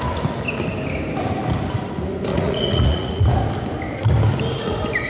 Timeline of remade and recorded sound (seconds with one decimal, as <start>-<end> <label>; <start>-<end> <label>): 0.0-2.3 recorded; 2.3-3.2 remade; 3.2-5.1 recorded